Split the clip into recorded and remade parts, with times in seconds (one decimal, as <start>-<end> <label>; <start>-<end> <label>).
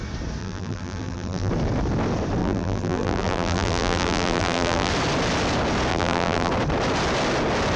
0.0-0.4 recorded; 0.4-1.5 remade; 1.5-2.4 recorded; 2.4-4.9 remade; 4.9-5.9 recorded; 5.9-6.5 remade; 6.5-7.8 recorded